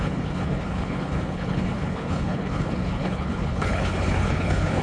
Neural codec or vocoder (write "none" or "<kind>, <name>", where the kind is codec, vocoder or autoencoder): codec, HILCodec